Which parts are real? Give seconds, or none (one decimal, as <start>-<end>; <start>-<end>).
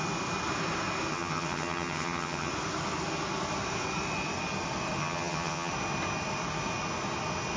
0.0-1.1; 2.5-5.0; 5.7-7.6